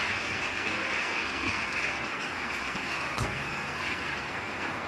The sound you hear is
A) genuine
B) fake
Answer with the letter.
B